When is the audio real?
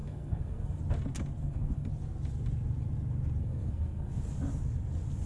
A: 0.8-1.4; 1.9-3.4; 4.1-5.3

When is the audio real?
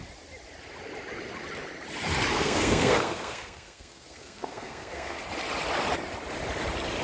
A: 0.0-2.3; 5.2-7.0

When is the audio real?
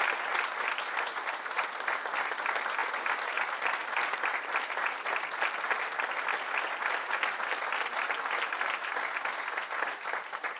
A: 0.0-10.6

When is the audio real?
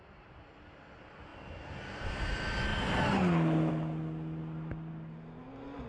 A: 0.0-5.9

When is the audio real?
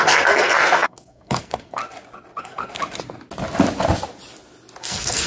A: 1.8-2.4; 2.8-4.8